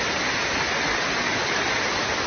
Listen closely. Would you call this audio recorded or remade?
recorded